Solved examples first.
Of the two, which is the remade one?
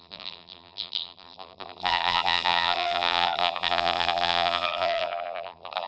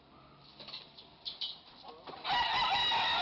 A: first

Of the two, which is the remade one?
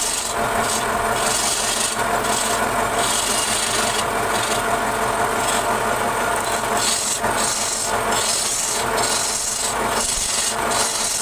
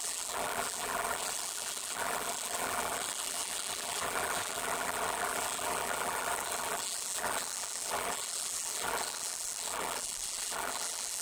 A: second